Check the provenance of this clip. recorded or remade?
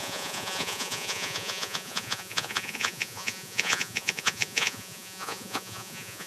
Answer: remade